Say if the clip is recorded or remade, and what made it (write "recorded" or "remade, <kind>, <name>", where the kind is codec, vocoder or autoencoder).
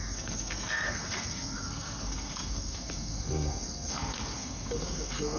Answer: remade, codec, SNAC